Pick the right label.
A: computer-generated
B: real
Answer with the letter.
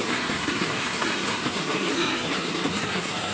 A